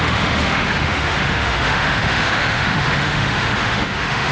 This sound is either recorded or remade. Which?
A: remade